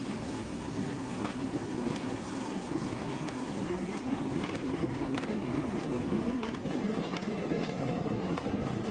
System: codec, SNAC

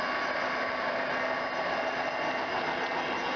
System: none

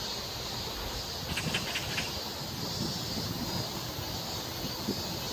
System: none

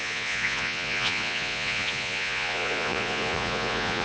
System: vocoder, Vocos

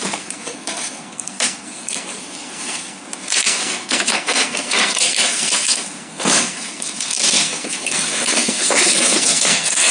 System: codec, SNAC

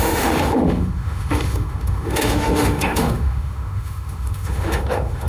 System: autoencoder, DAC-VAE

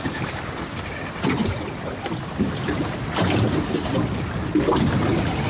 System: none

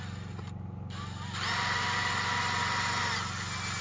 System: none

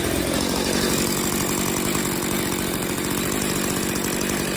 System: none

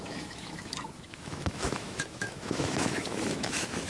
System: autoencoder, DAC-VAE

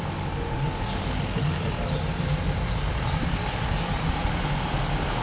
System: none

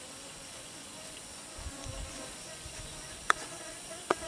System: vocoder, Vocos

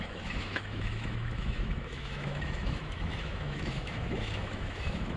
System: autoencoder, DAC-VAE